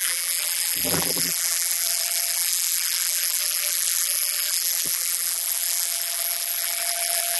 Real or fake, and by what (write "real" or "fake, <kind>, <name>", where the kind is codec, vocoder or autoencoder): fake, vocoder, BigVGAN v2